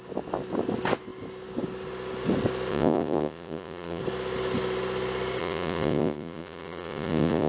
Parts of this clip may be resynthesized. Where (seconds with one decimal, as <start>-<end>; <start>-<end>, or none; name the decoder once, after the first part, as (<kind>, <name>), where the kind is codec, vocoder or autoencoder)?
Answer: 2.7-4.0 (vocoder, Vocos); 5.4-7.5